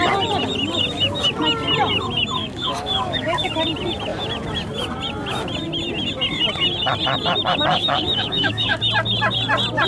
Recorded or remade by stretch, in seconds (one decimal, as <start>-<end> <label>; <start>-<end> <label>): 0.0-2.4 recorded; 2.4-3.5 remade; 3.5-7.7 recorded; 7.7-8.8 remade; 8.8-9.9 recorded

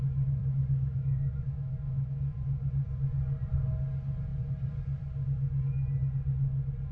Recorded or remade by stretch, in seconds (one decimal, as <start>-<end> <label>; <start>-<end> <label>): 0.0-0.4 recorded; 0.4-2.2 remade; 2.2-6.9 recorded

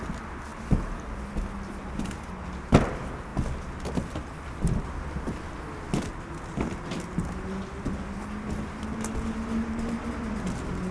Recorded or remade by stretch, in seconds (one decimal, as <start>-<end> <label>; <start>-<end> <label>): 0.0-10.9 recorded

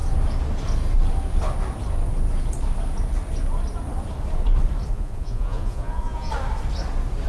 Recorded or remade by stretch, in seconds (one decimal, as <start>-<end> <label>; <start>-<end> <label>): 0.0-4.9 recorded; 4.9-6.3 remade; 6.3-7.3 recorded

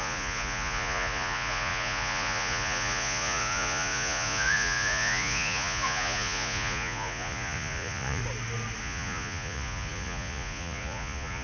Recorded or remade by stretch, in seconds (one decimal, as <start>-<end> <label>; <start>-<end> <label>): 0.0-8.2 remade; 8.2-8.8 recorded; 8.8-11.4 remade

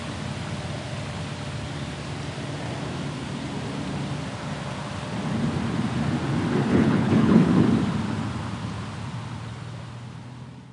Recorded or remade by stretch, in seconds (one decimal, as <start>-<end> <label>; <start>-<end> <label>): 0.0-6.7 recorded; 6.7-7.5 remade; 7.5-10.7 recorded